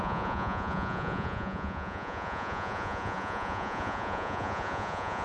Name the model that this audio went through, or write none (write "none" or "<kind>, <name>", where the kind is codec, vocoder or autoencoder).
vocoder, Vocos